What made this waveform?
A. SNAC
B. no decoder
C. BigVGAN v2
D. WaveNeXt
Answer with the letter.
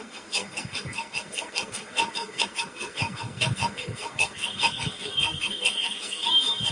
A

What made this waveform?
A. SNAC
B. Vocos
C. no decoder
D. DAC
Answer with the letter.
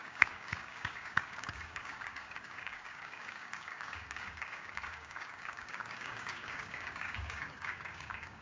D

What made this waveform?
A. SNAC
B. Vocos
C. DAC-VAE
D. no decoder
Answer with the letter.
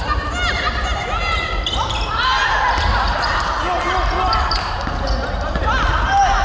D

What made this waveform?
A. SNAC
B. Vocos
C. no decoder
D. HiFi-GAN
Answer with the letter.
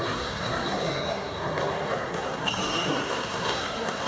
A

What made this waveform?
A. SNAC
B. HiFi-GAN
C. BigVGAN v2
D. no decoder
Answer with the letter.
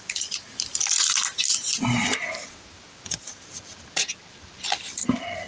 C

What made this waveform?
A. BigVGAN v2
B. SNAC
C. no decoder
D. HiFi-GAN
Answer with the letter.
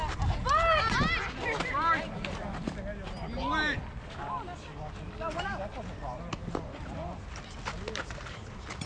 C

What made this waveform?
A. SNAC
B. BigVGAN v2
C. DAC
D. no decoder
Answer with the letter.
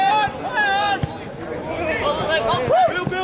D